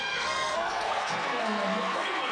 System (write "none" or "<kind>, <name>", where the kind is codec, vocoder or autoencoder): codec, SNAC